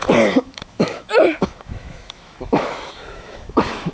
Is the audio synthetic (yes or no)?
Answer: yes